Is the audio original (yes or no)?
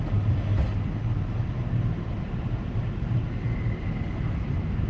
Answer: no